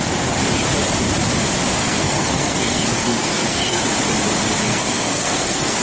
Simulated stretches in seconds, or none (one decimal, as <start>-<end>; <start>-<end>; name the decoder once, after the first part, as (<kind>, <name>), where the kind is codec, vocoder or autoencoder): 1.8-3.8 (codec, SNAC); 4.7-5.8